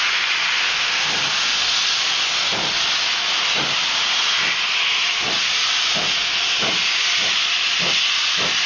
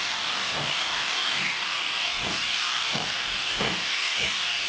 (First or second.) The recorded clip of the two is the first